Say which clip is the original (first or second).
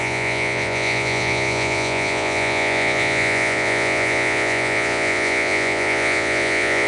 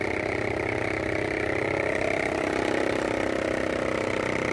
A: second